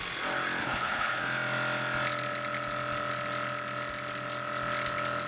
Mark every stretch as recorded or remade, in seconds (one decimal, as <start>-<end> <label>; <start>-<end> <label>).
0.0-0.6 recorded; 0.6-1.2 remade; 1.2-5.3 recorded